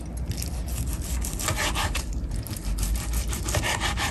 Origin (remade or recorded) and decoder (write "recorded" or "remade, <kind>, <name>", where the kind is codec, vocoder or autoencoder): recorded